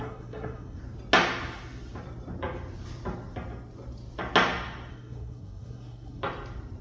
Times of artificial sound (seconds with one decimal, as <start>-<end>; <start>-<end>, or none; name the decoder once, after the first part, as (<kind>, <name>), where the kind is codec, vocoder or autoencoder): 0.0-0.8 (codec, SNAC); 4.9-6.2

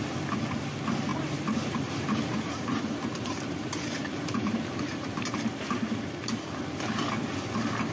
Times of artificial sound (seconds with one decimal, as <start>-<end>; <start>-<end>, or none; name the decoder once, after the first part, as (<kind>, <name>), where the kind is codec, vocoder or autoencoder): 1.1-5.7 (vocoder, BigVGAN v2)

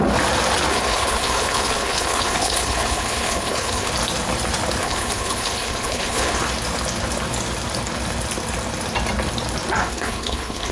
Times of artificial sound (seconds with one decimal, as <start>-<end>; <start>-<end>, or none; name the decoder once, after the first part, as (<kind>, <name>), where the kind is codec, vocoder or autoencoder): 0.7-3.9 (codec, HILCodec); 4.8-6.4; 9.8-10.7

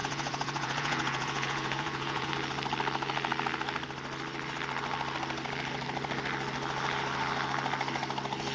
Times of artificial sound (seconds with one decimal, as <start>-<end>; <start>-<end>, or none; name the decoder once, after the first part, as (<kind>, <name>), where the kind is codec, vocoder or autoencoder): 0.0-2.3 (vocoder, Vocos)